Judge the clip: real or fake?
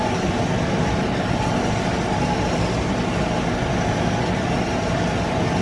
real